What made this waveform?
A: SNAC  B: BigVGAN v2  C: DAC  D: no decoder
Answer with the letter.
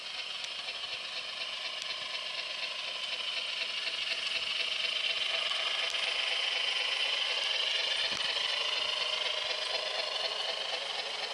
D